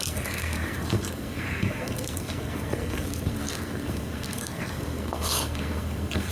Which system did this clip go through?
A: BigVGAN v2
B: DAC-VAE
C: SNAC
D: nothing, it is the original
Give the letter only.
C